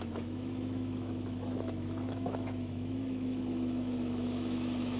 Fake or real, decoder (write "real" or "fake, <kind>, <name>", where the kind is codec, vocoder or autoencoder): fake, autoencoder, DAC-VAE